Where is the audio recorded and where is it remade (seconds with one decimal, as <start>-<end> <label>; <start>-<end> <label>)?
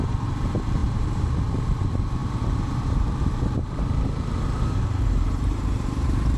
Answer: 0.0-6.4 remade